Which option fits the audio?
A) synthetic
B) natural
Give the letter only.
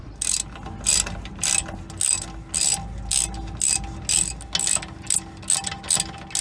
B